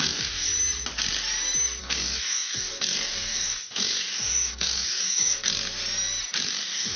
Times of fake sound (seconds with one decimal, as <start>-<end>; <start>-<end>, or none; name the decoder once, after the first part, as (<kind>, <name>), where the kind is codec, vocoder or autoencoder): 0.0-0.5 (codec, DAC); 1.8-5.5; 6.5-7.0